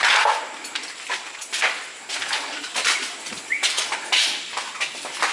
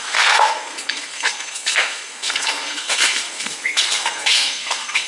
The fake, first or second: second